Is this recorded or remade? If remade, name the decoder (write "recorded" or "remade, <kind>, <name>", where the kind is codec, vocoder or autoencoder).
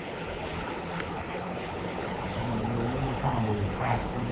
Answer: remade, codec, HILCodec